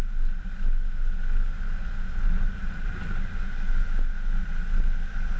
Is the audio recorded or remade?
recorded